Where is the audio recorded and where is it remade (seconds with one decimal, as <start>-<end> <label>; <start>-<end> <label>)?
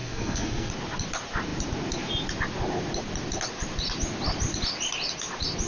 0.0-0.7 remade; 0.7-5.7 recorded